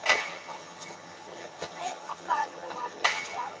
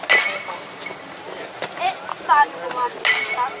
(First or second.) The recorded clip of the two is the second